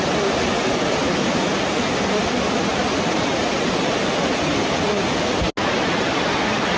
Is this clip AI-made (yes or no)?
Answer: no